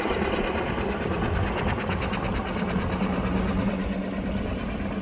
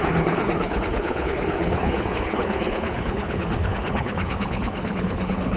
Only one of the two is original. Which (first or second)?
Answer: first